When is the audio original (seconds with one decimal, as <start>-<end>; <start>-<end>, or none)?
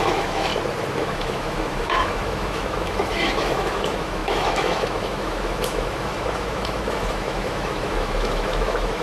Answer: 0.5-1.0